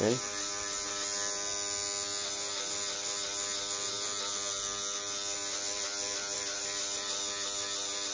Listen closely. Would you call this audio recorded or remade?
recorded